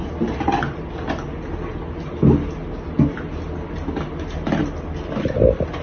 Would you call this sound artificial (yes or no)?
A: no